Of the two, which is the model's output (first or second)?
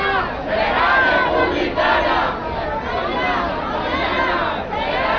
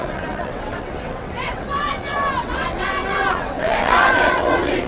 second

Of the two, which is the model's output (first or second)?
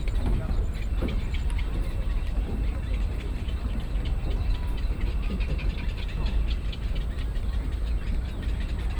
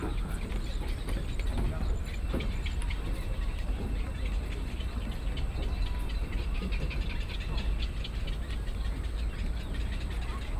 first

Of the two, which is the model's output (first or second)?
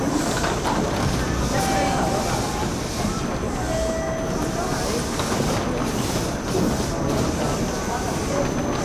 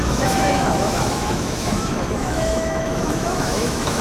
second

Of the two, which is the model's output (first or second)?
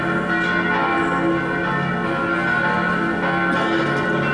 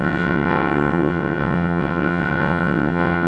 second